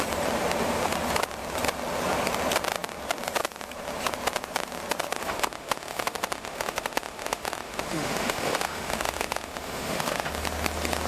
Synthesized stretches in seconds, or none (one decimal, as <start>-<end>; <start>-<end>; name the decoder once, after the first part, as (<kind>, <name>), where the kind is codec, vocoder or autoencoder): 5.2-10.3 (autoencoder, DAC-VAE)